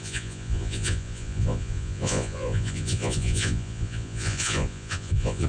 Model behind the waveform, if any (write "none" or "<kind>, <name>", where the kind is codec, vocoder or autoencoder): vocoder, Vocos